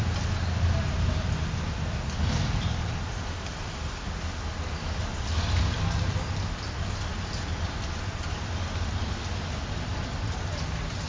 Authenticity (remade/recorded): recorded